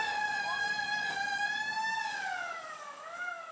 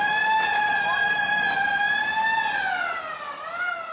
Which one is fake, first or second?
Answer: first